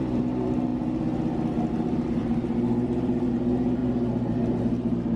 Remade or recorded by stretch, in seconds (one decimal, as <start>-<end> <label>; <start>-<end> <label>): 0.0-0.7 remade; 0.7-1.7 recorded; 1.7-3.8 remade; 3.8-4.6 recorded; 4.6-5.2 remade